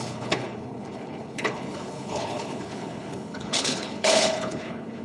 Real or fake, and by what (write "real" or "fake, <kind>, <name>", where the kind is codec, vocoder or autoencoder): fake, codec, HILCodec